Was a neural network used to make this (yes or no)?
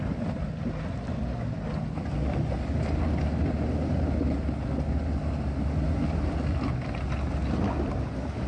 no